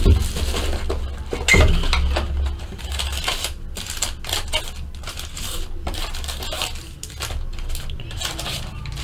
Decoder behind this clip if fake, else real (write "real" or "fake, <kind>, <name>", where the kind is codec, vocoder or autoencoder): real